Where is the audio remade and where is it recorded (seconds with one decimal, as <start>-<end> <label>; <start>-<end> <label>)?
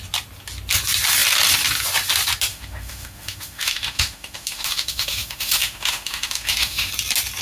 0.0-2.5 recorded; 2.5-6.9 remade; 6.9-7.4 recorded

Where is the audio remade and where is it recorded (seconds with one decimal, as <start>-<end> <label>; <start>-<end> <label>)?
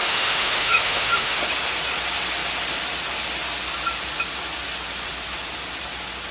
0.0-1.4 remade; 1.4-6.3 recorded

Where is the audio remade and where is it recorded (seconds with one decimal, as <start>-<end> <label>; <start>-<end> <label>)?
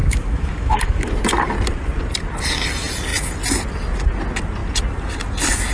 0.0-1.1 remade; 1.1-5.7 recorded